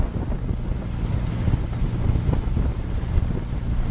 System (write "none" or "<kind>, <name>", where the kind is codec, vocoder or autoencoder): none